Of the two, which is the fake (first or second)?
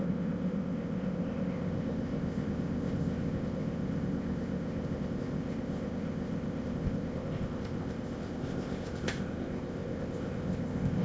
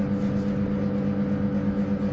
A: first